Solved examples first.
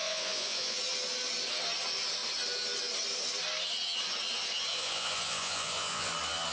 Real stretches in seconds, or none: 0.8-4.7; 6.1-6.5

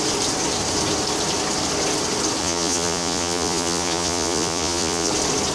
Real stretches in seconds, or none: 0.0-2.4; 5.1-5.5

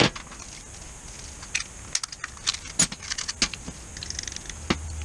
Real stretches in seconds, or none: 0.0-5.0

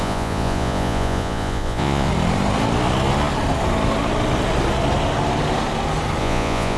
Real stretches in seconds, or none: 2.1-6.2